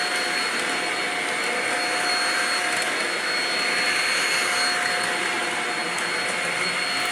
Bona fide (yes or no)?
yes